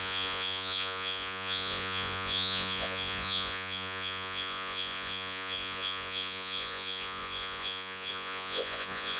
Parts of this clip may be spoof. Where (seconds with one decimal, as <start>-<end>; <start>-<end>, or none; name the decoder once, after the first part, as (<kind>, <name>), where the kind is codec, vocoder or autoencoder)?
0.0-9.2 (vocoder, Vocos)